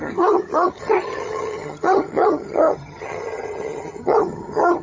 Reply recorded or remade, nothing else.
remade